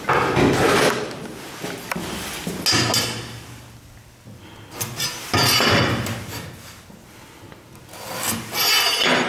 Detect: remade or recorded recorded